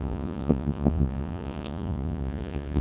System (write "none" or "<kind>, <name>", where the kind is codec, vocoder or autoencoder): vocoder, Vocos